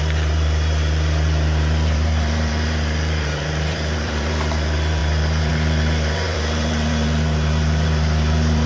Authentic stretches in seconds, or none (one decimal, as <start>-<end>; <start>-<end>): none